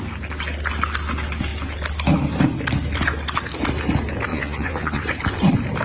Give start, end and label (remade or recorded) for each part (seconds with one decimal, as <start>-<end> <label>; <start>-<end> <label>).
0.0-4.3 recorded; 4.3-5.0 remade; 5.0-5.8 recorded